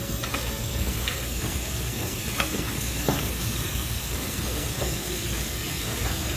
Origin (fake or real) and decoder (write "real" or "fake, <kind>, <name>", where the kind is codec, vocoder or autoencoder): fake, codec, SNAC